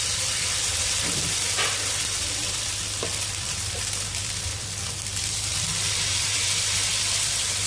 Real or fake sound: fake